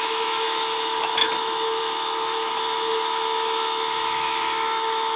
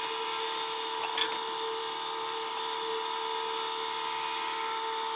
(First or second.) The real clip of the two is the second